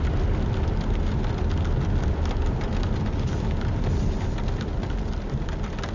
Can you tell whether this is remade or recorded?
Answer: recorded